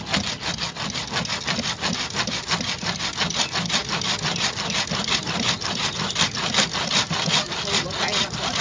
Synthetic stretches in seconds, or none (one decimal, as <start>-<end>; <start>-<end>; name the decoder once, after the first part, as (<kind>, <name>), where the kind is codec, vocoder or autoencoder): none